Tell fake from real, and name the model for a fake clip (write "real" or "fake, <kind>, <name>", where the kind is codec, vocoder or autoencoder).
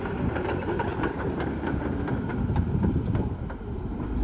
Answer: fake, vocoder, BigVGAN v2